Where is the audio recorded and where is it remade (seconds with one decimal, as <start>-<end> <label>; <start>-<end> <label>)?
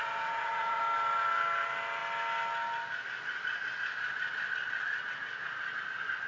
0.0-0.8 remade; 0.8-6.3 recorded